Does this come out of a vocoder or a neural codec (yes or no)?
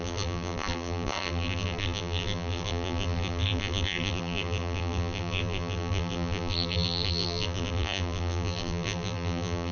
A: yes